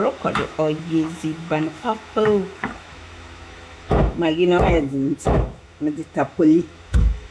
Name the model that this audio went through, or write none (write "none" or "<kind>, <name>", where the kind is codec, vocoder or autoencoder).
autoencoder, DAC-VAE